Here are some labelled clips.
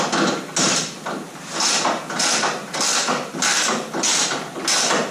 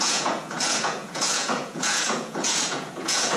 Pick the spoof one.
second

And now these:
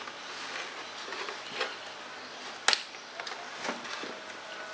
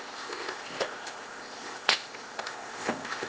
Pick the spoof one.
second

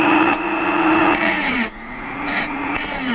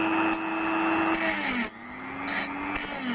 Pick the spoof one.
first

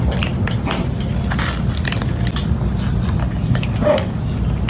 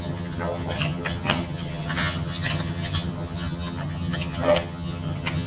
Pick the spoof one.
second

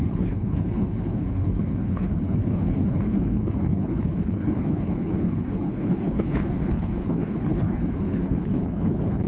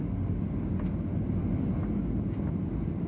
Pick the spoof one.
first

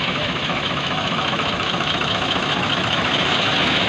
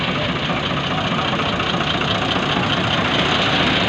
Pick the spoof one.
first